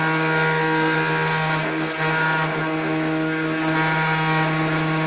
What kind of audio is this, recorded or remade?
recorded